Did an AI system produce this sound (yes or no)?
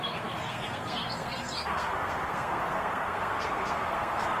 yes